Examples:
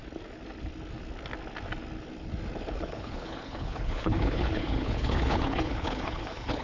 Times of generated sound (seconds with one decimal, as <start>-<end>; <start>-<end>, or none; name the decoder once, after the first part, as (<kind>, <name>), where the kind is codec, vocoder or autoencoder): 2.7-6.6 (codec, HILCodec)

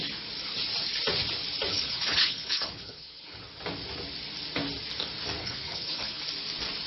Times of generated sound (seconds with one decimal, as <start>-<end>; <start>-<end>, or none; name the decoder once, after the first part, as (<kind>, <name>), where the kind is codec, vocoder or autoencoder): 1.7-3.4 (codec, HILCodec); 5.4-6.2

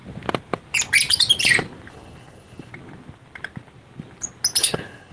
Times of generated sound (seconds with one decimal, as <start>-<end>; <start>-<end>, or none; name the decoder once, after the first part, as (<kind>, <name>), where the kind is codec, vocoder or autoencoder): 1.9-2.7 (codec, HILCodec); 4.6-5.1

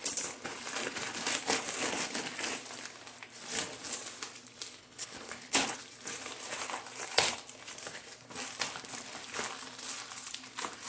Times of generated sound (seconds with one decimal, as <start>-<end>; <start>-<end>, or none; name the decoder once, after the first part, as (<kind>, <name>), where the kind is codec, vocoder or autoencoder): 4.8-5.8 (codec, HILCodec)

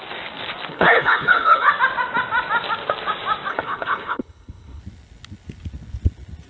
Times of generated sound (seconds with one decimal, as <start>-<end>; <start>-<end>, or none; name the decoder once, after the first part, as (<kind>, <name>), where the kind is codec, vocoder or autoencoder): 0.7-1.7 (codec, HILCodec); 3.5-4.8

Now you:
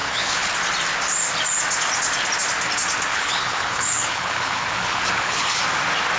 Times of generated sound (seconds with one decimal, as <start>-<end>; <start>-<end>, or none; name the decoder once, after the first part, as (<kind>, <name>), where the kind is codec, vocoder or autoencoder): 0.0-0.5 (codec, HILCodec); 3.1-5.6

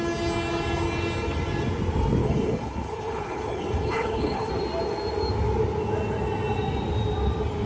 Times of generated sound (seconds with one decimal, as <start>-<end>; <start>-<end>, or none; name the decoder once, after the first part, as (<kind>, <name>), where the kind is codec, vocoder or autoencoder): 2.2-4.5 (codec, HILCodec)

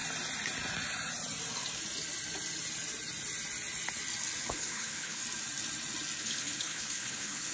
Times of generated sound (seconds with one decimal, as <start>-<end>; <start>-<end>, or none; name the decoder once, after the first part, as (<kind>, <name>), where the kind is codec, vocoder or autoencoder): 4.5-5.2 (codec, HILCodec); 6.2-7.5